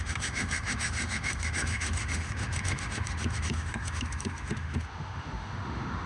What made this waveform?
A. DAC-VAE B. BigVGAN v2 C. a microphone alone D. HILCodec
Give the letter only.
A